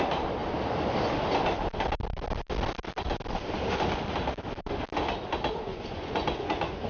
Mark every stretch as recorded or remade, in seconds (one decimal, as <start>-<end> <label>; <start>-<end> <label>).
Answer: 0.0-5.7 recorded; 5.7-6.9 remade